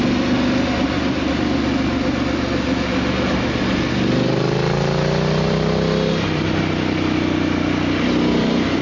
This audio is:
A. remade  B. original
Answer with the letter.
B